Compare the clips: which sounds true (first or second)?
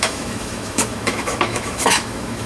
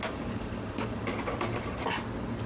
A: second